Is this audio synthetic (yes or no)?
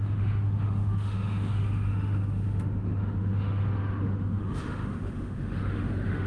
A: yes